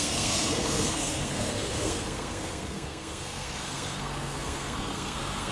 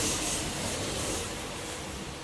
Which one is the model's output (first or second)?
first